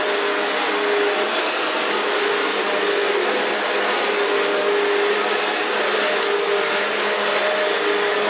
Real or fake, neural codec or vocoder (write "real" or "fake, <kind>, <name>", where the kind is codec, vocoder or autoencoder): real